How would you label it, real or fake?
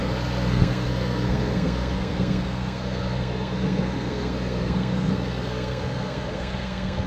fake